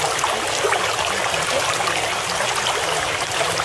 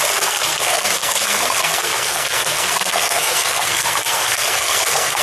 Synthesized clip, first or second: second